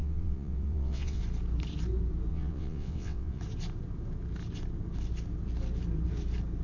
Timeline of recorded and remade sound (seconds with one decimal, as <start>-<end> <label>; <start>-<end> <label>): 0.0-1.2 remade; 1.2-2.3 recorded; 2.3-3.4 remade; 3.4-6.6 recorded